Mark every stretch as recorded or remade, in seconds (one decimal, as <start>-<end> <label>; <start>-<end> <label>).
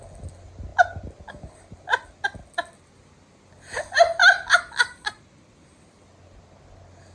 0.0-7.1 recorded